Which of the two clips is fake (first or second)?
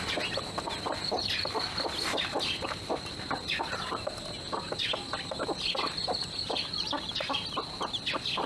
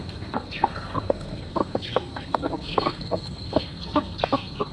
second